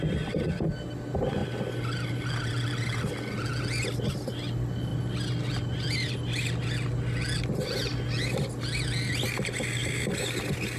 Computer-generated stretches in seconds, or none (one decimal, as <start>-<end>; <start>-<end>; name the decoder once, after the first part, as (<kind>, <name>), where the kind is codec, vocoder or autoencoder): none